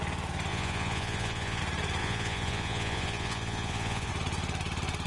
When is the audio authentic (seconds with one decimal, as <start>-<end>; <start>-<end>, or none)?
0.0-0.5; 1.6-2.0; 4.1-5.1